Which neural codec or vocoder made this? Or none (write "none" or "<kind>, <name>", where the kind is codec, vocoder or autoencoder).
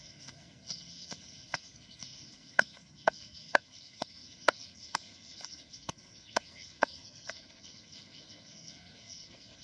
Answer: codec, SNAC